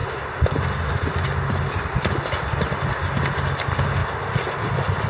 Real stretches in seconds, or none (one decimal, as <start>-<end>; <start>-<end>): 0.0-5.1